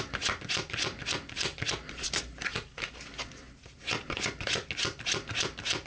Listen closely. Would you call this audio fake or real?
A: real